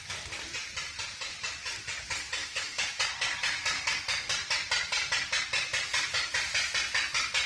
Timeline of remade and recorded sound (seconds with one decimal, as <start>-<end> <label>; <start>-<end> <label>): 0.0-2.4 recorded; 2.4-3.0 remade; 3.0-7.5 recorded

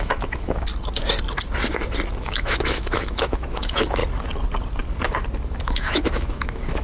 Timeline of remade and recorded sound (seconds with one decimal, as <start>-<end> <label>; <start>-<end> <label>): 0.0-0.7 remade; 0.7-2.2 recorded; 2.2-4.0 remade; 4.0-5.6 recorded; 5.6-6.8 remade

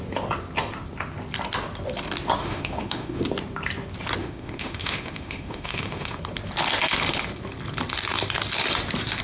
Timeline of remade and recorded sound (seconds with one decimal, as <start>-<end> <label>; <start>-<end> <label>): 0.0-2.4 recorded; 2.4-3.2 remade; 3.2-4.2 recorded; 4.2-6.2 remade; 6.2-9.2 recorded